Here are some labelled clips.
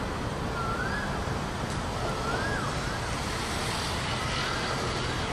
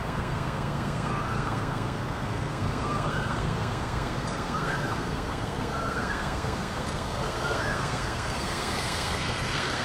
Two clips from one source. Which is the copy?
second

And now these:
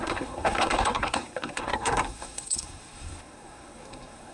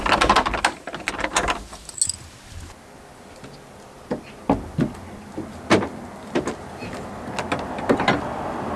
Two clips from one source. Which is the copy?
first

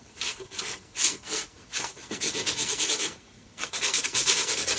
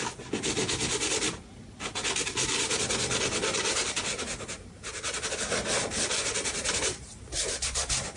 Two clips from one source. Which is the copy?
first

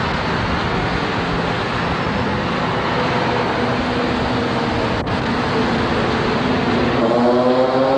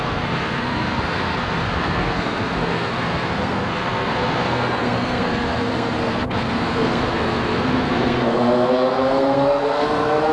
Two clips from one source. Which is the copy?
second